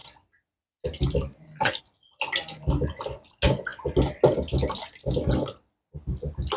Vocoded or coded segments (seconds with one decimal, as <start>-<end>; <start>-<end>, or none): none